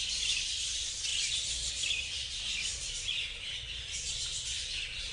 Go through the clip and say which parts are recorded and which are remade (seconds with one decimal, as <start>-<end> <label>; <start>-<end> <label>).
0.0-5.1 recorded